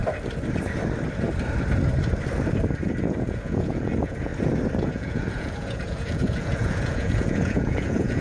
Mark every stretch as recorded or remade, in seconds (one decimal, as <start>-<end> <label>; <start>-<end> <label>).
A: 0.0-3.0 recorded; 3.0-4.3 remade; 4.3-4.9 recorded; 4.9-8.2 remade